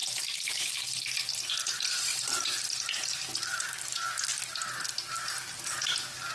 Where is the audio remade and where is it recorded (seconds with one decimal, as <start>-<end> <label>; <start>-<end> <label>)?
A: 0.0-1.5 remade; 1.5-2.1 recorded; 2.1-3.5 remade; 3.5-6.3 recorded